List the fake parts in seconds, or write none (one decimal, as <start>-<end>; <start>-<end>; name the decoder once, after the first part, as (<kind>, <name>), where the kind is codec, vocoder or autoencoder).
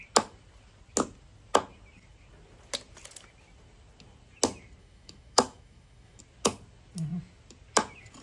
4.8-6.2 (autoencoder, DAC-VAE)